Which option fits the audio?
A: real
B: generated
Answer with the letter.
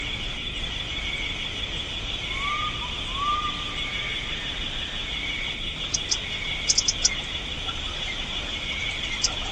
A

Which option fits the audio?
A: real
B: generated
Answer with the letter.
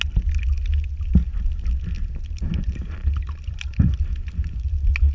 A